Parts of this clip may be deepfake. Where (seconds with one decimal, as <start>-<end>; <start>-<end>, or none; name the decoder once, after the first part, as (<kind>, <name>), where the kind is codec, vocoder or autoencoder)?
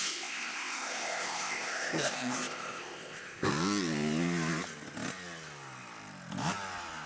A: 0.0-3.5 (codec, ZipCodec)